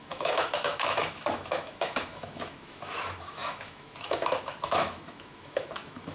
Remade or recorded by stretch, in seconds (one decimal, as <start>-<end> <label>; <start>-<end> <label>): 0.0-6.1 remade